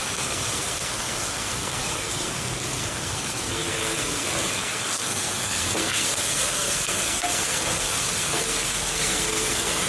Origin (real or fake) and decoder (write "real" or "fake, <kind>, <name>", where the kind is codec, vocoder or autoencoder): fake, codec, SNAC